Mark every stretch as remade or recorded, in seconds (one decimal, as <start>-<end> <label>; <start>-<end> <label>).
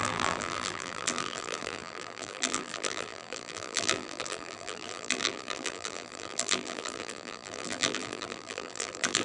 0.0-9.2 remade